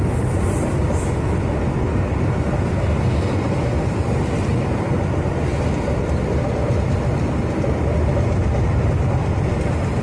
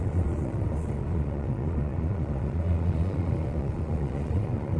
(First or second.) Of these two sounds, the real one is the first